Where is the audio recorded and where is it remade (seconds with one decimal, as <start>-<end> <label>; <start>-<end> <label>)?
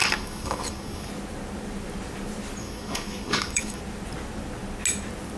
0.0-1.1 remade; 1.1-2.6 recorded; 2.6-3.8 remade; 3.8-5.4 recorded